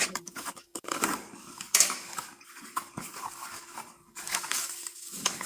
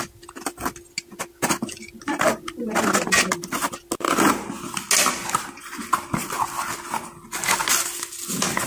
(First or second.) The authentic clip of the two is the second